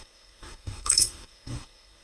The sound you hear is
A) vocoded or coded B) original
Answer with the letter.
A